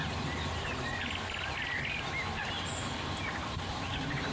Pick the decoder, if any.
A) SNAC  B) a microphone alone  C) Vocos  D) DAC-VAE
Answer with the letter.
B